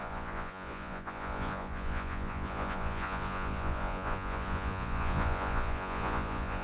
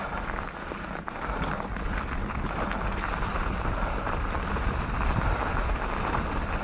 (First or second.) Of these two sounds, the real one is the second